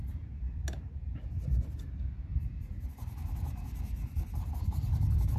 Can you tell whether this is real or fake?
fake